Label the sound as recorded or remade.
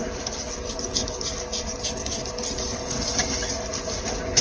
recorded